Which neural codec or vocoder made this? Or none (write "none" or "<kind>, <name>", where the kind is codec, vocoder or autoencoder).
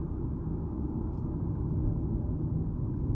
none